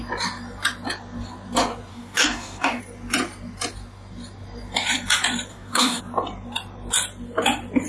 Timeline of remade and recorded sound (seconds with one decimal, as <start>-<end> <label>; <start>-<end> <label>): 0.0-1.9 recorded; 1.9-2.8 remade; 2.8-5.5 recorded; 5.5-6.0 remade; 6.0-7.9 recorded